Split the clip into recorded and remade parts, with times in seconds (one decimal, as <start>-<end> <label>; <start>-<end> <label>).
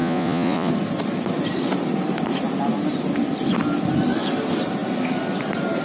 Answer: 0.0-0.7 remade; 0.7-5.8 recorded